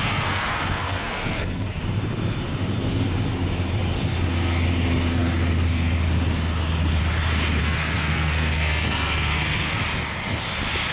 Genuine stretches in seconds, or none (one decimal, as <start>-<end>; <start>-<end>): 1.8-7.6; 9.8-10.9